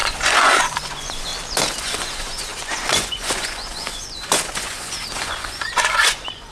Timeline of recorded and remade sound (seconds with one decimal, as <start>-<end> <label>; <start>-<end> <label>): 0.0-1.3 remade; 1.3-1.8 recorded; 1.8-6.5 remade